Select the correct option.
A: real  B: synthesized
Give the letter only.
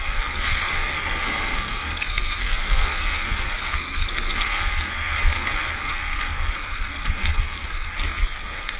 B